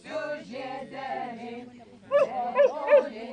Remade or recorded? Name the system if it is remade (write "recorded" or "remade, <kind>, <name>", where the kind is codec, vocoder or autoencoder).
recorded